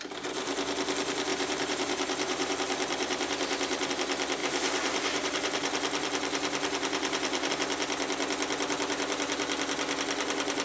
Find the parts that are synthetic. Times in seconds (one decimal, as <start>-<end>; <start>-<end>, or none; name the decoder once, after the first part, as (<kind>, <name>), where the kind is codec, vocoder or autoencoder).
1.3-3.9 (vocoder, BigVGAN v2); 4.4-7.5